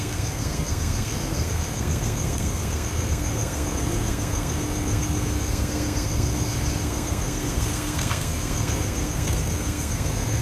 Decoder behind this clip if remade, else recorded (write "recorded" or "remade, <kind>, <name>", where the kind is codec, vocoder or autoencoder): remade, codec, SNAC